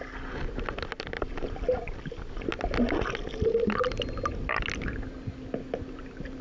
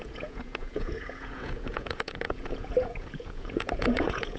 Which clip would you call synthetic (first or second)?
second